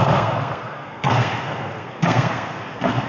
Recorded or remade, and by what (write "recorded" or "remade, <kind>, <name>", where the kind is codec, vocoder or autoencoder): remade, codec, SNAC